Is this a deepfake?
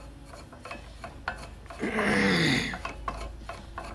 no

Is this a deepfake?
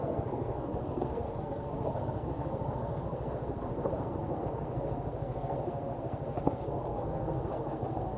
yes